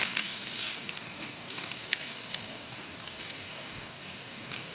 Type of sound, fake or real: fake